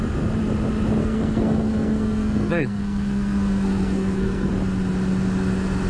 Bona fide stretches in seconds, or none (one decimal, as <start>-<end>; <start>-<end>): 0.0-1.0; 4.5-5.9